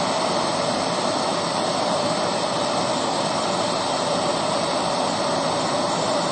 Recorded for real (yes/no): no